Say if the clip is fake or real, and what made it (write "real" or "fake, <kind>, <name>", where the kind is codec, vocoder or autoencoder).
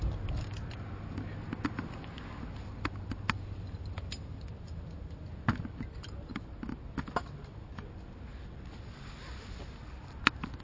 real